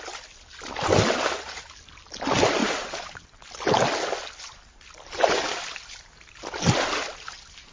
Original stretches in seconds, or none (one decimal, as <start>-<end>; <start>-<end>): 0.0-7.7